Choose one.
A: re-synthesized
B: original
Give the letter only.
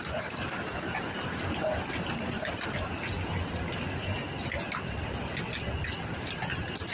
B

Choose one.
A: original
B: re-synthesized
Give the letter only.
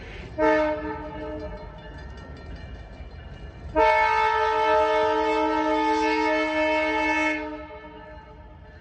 A